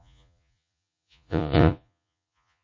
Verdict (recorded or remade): remade